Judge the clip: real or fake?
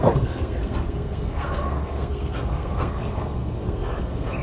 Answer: fake